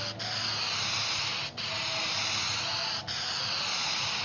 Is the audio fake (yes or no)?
no